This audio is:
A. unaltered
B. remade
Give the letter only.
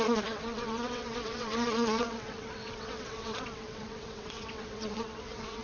B